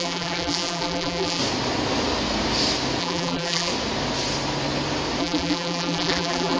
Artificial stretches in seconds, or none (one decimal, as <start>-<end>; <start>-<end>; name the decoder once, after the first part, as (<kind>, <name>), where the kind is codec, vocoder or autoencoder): 0.0-1.4 (vocoder, BigVGAN v2); 3.0-3.7; 5.2-6.6

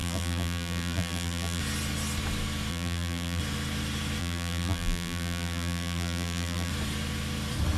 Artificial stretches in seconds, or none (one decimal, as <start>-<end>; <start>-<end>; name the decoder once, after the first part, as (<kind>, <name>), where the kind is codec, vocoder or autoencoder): 0.0-1.6 (vocoder, BigVGAN v2); 2.7-3.4; 4.2-6.7

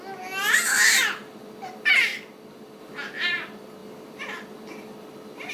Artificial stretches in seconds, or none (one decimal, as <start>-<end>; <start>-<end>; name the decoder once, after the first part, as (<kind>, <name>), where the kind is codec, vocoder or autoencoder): none

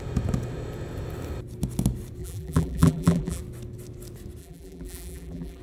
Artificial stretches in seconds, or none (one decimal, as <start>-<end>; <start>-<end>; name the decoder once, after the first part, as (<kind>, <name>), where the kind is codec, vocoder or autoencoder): 2.2-3.4 (vocoder, BigVGAN v2); 4.4-5.6

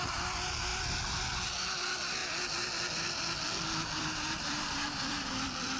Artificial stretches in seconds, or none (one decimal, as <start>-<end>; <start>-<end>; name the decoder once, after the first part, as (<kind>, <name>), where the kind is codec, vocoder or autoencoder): 4.0-5.3 (vocoder, BigVGAN v2)